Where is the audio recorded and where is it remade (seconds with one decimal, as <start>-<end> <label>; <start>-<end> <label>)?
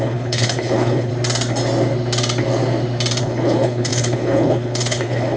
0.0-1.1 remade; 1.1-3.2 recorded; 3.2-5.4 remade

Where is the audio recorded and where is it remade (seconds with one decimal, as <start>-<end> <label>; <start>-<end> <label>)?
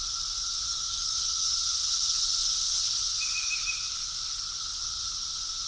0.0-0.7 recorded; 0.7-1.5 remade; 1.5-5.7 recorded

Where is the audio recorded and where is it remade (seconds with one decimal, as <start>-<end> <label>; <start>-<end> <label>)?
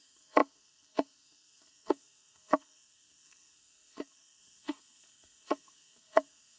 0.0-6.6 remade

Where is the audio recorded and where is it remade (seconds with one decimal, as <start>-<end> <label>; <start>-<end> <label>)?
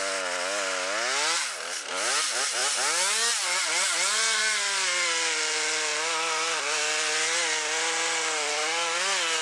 0.0-9.4 recorded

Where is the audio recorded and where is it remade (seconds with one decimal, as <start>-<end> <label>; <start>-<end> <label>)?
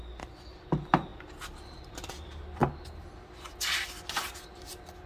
0.0-5.1 recorded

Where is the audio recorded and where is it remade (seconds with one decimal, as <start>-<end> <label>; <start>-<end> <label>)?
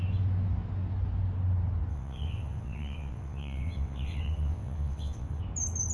0.0-1.9 recorded; 1.9-5.4 remade; 5.4-5.9 recorded